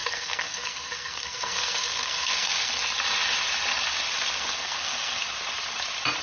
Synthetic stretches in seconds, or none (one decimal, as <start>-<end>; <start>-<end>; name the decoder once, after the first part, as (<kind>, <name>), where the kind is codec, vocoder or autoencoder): 0.0-2.7 (codec, SNAC); 4.3-5.2

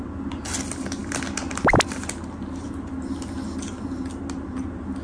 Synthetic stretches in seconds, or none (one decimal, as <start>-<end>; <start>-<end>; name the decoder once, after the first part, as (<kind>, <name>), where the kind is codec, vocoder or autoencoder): none

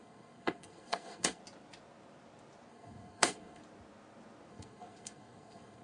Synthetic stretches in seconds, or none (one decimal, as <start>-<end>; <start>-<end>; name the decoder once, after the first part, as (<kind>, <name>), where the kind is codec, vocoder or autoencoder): 0.0-1.4 (codec, SNAC); 2.7-3.6; 4.5-5.8